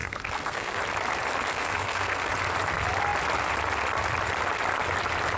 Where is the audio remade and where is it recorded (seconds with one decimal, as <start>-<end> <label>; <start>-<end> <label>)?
0.0-0.8 remade; 0.8-1.5 recorded; 1.5-2.3 remade; 2.3-5.4 recorded